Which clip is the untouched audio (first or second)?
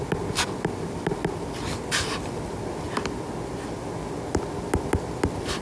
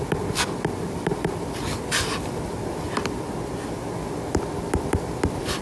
first